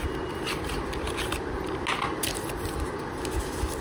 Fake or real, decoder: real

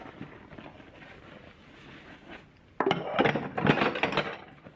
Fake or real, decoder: real